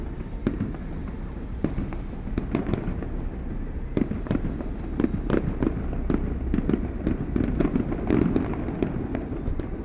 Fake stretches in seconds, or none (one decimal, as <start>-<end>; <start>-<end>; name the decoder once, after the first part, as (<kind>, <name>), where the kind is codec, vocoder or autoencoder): none